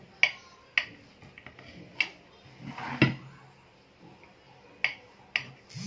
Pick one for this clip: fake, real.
real